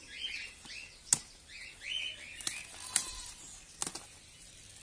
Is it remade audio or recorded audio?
recorded